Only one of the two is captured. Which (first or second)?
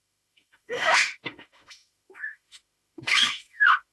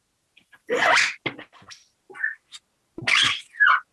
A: second